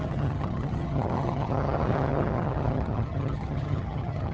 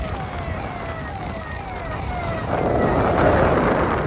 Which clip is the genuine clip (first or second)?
second